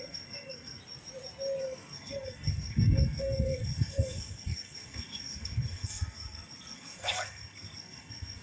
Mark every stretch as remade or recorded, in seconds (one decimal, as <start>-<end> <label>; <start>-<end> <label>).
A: 0.0-0.8 remade; 0.8-1.6 recorded; 1.6-8.4 remade